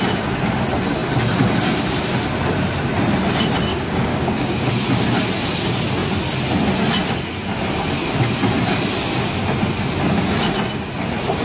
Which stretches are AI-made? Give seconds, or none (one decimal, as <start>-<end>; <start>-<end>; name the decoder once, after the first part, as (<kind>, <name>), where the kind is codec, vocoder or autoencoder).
3.7-4.7 (codec, DAC)